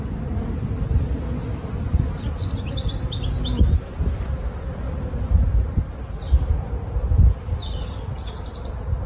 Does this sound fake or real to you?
real